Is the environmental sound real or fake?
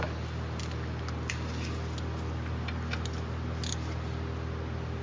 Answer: real